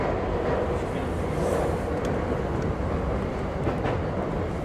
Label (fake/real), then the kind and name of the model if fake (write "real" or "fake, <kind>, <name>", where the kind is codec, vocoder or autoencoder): real